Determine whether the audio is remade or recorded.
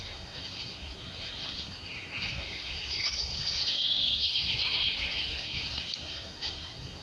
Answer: remade